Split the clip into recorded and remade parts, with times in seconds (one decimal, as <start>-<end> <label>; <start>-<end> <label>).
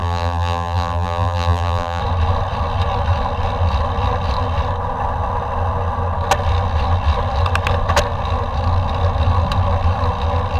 0.0-2.0 remade; 2.0-10.6 recorded